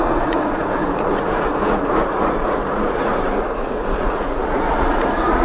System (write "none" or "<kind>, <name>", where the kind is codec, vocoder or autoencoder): vocoder, Vocos